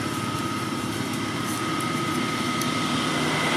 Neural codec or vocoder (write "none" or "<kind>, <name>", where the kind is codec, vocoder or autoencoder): none